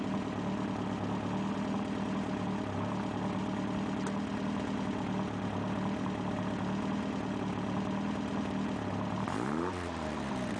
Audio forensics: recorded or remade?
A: recorded